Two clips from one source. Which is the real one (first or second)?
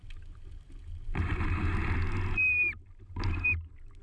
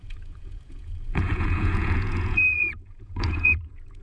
first